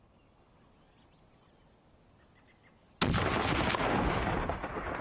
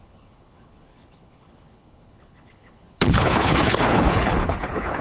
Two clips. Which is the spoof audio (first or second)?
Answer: second